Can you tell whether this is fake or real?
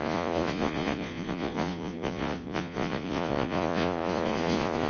fake